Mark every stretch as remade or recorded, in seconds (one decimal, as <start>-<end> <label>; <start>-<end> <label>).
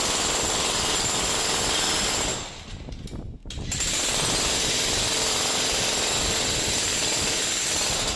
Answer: 0.0-8.2 recorded